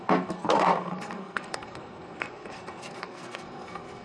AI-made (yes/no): yes